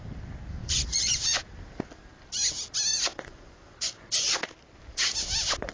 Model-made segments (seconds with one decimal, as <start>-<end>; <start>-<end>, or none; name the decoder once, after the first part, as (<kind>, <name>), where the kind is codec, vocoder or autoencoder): 0.6-1.4 (vocoder, Vocos); 2.9-4.5